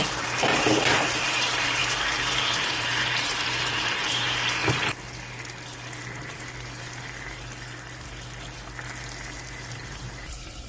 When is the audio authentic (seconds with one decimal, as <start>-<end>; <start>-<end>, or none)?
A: 1.8-2.4; 4.6-9.7